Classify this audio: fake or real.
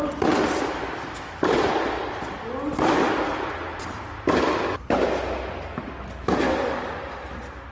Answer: real